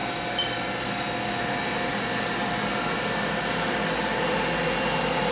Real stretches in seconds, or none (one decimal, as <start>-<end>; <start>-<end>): 0.0-5.3